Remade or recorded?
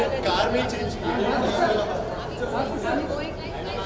recorded